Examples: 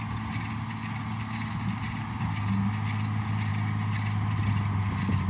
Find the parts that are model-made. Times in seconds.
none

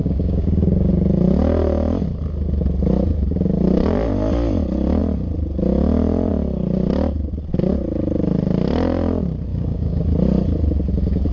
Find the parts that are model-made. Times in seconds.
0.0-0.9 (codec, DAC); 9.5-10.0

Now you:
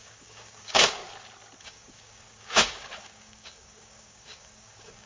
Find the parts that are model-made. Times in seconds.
0.0-1.0 (codec, DAC); 1.6-5.1